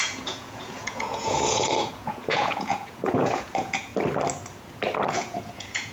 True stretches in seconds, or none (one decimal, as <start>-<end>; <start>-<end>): 3.9-5.1